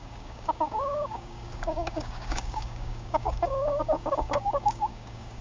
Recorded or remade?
remade